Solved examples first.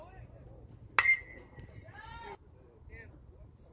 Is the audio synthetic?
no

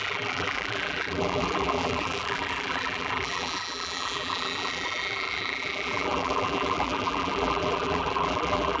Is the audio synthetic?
yes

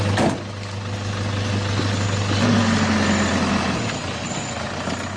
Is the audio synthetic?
no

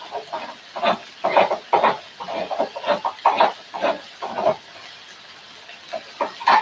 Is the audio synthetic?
no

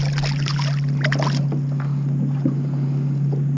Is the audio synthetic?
no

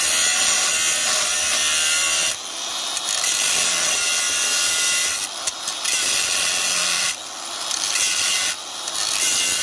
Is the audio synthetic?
no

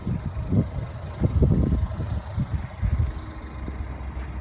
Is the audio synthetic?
no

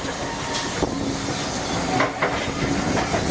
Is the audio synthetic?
no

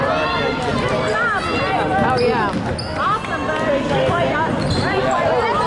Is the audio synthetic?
no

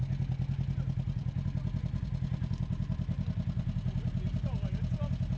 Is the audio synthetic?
no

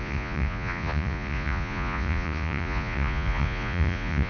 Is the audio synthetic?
yes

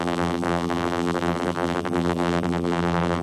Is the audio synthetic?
yes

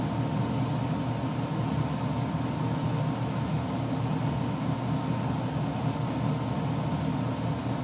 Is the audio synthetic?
no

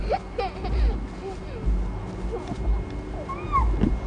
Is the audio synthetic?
no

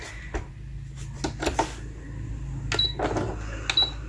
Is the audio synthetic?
no